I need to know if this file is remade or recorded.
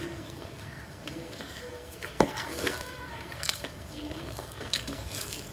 remade